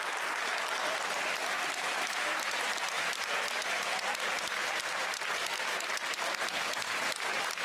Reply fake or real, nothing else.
real